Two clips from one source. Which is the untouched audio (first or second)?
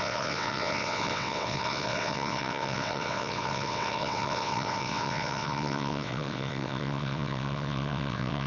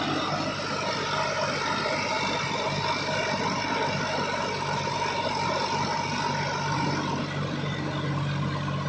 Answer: second